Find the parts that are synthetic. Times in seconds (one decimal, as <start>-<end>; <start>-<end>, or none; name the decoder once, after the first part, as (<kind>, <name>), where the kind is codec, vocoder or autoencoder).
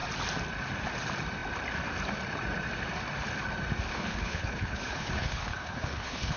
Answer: 3.9-6.4 (codec, HILCodec)